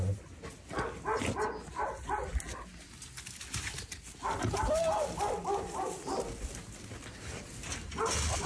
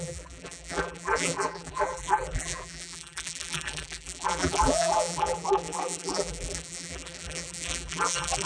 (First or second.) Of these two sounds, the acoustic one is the first